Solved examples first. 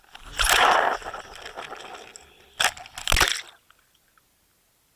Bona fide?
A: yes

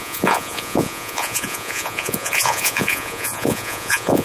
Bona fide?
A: no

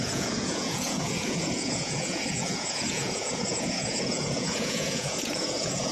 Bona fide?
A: no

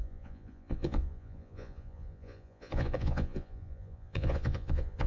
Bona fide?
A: no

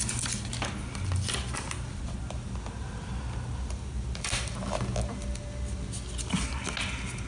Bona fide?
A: yes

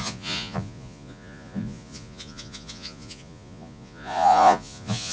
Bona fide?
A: no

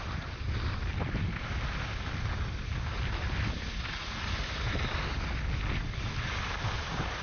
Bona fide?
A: yes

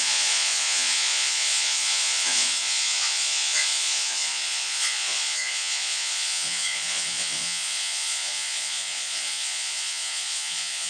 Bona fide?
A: no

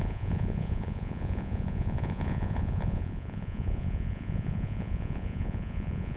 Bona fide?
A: no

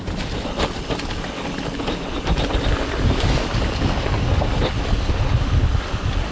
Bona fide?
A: yes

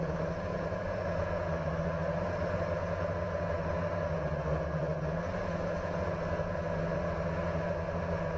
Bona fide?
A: no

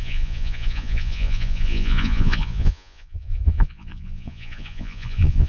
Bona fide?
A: no